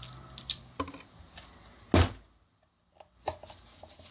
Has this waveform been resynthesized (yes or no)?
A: no